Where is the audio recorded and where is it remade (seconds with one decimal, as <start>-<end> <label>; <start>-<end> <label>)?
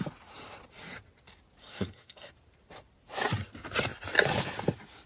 0.0-1.6 recorded; 1.6-2.3 remade; 2.3-5.1 recorded